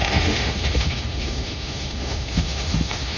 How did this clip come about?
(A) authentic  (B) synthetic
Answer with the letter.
B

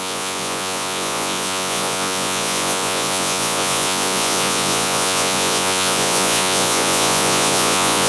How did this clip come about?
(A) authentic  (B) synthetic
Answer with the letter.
B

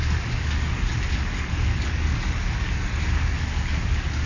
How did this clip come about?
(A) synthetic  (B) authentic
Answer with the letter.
A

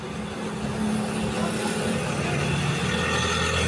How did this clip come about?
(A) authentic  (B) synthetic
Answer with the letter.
A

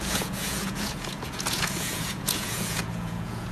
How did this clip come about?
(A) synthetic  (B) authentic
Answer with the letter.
A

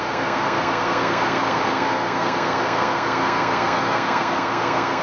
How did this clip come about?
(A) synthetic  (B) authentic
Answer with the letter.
A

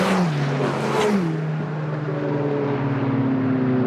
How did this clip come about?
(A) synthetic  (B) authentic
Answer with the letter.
B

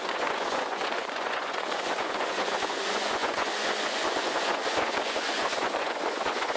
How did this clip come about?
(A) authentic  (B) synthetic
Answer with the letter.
B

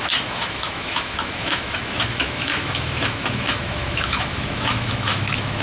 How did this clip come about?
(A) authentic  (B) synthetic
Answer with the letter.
B